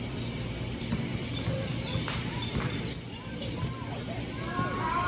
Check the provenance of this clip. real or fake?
real